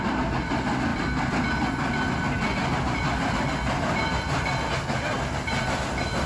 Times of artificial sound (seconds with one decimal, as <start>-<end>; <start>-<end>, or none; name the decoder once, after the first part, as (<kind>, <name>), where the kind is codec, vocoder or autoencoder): none